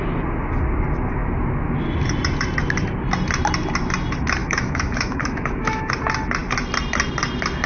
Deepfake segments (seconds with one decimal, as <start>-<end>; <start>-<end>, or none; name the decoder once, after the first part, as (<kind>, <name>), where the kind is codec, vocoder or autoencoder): 4.4-5.9 (autoencoder, DAC-VAE)